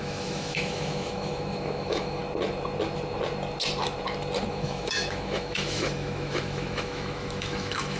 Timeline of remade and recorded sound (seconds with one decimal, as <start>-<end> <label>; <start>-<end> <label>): 0.0-2.2 remade; 2.2-4.5 recorded; 4.5-8.0 remade